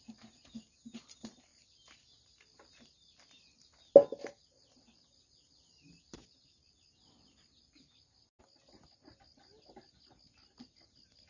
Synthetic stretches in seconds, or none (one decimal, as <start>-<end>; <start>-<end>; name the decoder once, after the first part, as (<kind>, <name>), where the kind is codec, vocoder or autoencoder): none